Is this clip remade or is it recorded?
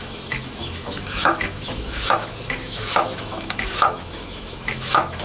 remade